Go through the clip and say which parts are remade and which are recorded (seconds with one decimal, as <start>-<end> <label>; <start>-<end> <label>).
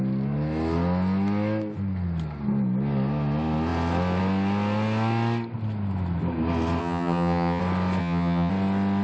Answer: 0.0-6.8 recorded; 6.8-7.6 remade; 7.6-8.0 recorded; 8.0-8.5 remade; 8.5-9.0 recorded